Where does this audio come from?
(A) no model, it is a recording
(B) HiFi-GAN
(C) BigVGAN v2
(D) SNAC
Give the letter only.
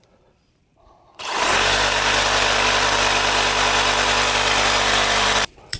C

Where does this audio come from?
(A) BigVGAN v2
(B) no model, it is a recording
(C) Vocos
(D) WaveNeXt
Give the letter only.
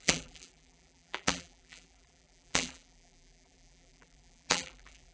A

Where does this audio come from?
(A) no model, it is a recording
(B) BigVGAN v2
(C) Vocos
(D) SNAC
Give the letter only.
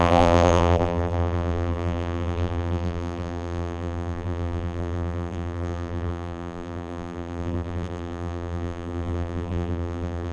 B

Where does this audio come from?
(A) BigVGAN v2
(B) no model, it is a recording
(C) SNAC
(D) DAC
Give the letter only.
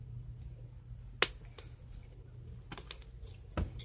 B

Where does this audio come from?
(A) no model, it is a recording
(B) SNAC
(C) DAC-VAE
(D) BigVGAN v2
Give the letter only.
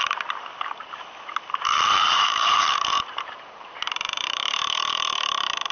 D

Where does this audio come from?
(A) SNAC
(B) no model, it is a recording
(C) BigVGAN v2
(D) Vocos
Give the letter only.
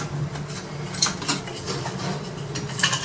B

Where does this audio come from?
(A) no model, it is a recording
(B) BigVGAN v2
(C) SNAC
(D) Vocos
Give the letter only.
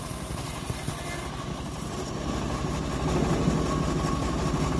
A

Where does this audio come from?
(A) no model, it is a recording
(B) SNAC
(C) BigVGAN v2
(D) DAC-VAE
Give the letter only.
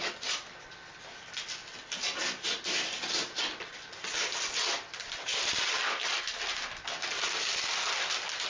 A